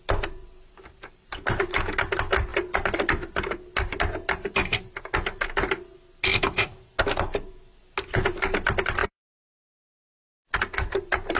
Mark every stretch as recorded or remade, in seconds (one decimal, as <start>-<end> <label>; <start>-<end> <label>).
0.0-9.0 recorded; 9.0-9.6 remade; 9.6-11.4 recorded